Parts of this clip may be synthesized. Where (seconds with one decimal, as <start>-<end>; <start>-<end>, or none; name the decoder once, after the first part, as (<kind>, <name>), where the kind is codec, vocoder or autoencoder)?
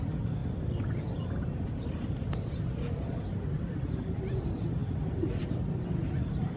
none